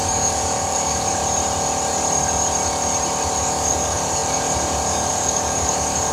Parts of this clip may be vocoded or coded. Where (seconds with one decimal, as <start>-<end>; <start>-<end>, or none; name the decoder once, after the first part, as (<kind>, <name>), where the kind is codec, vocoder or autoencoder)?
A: 0.0-1.2 (codec, DAC); 3.4-6.1